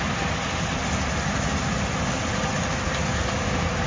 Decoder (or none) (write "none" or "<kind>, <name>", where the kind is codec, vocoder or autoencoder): none